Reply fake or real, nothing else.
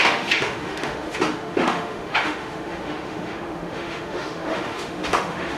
fake